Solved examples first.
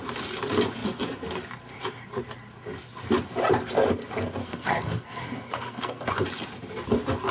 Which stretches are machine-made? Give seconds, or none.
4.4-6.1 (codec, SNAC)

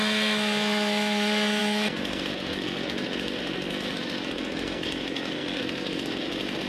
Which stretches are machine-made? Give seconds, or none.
0.0-6.7 (codec, SNAC)

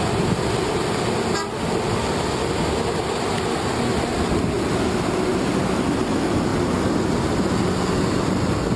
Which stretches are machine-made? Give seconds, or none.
none

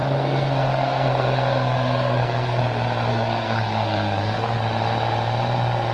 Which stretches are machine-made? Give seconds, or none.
0.0-2.6 (codec, SNAC); 3.1-4.6